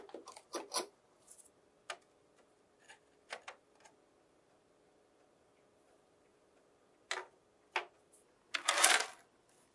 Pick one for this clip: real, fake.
real